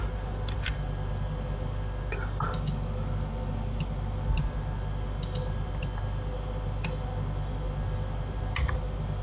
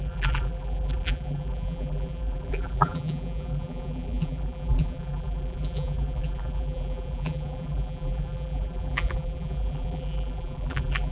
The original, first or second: first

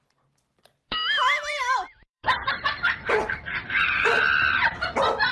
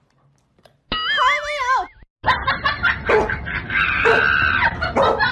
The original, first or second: second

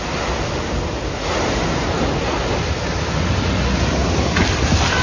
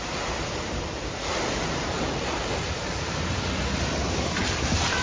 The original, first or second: first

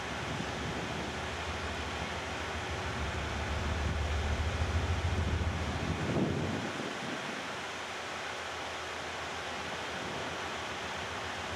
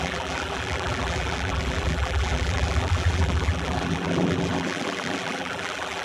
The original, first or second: first